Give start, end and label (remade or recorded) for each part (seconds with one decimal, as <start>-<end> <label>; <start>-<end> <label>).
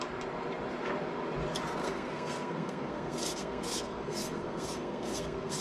0.0-1.8 recorded; 1.8-5.6 remade